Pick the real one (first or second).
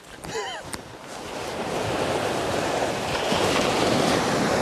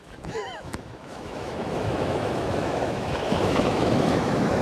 first